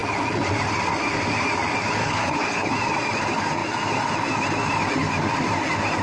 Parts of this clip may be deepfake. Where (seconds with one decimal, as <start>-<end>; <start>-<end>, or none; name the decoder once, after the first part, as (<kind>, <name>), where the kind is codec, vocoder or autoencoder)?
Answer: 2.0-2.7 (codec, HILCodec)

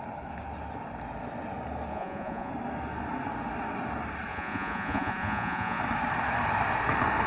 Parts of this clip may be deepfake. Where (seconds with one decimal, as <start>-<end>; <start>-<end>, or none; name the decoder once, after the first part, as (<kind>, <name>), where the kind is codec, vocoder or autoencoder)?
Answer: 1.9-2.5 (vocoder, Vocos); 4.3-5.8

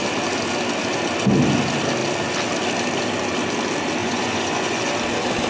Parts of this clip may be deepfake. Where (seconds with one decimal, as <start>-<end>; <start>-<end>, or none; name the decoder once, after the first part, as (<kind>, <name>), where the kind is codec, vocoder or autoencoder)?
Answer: 4.0-4.9 (vocoder, Vocos)

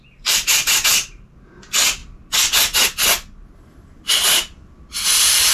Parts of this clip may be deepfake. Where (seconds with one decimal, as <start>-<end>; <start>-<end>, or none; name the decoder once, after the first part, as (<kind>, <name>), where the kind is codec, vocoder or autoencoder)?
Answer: 0.0-2.0 (vocoder, BigVGAN v2)

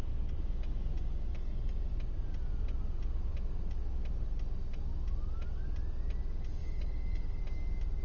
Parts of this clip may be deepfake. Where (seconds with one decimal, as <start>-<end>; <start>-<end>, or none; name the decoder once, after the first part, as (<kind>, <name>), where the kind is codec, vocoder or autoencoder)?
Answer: 1.3-1.9 (autoencoder, DAC-VAE); 6.6-7.4